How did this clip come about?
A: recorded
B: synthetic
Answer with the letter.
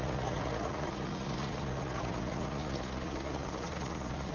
B